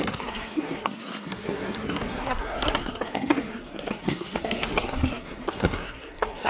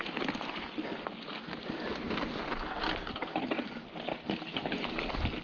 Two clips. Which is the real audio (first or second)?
second